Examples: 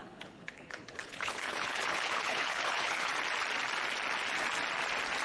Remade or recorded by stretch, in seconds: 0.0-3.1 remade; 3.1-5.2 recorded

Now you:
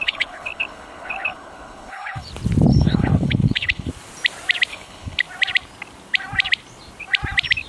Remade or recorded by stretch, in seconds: 0.0-2.3 remade; 2.3-2.7 recorded; 2.7-3.9 remade; 3.9-4.7 recorded; 4.7-5.2 remade; 5.2-7.7 recorded

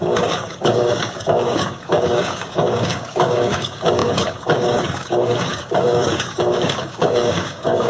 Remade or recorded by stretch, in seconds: 0.0-7.9 remade